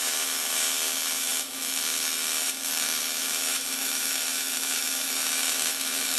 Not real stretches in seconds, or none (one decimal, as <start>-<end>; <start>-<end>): 0.0-6.2